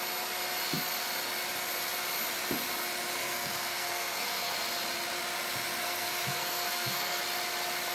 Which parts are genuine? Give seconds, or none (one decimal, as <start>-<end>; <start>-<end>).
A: 0.0-3.2; 4.5-5.8; 7.2-7.9